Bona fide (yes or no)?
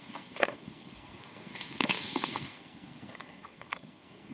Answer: no